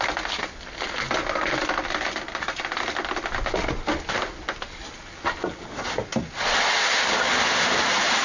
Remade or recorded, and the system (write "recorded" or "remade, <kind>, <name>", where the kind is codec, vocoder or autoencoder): recorded